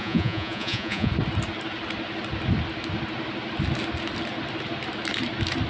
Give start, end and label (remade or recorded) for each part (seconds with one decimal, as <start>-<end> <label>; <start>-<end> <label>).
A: 0.0-1.1 remade; 1.1-5.7 recorded